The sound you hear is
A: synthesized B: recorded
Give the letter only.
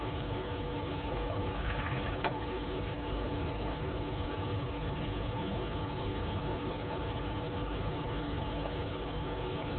A